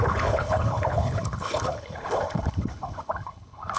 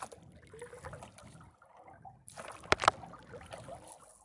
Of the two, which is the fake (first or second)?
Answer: first